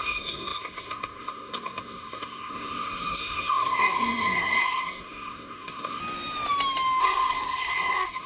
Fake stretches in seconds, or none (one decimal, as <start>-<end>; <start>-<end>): 0.0-6.0; 7.0-8.3